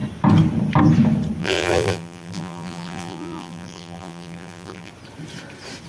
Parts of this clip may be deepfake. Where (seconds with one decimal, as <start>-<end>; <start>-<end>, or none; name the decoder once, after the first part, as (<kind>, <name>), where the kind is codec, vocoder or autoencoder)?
1.4-4.9 (vocoder, BigVGAN v2)